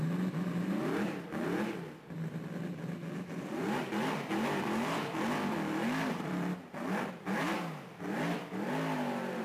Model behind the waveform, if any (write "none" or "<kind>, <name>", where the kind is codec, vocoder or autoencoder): none